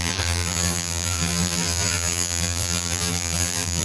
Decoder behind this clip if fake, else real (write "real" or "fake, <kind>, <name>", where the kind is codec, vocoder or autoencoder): fake, vocoder, BigVGAN v2